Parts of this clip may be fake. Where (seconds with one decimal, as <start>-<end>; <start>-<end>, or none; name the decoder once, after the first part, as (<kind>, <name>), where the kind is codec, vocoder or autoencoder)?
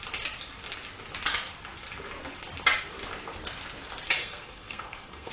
4.2-5.3 (codec, SNAC)